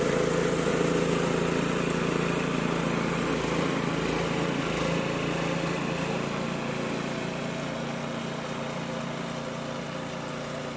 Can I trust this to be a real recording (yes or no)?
yes